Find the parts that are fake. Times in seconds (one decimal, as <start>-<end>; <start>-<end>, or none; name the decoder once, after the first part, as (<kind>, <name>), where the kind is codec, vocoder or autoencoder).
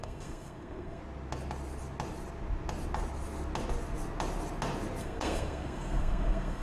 0.0-1.0 (codec, SNAC); 5.0-6.6